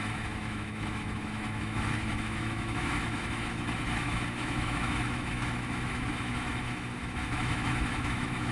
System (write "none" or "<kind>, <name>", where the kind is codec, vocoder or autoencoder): autoencoder, DAC-VAE